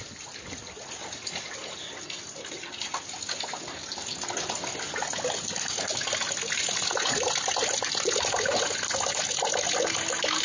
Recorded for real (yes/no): yes